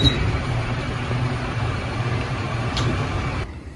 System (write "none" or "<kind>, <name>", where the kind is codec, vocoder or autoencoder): vocoder, BigVGAN v2